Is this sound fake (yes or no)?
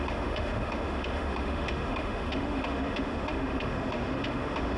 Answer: yes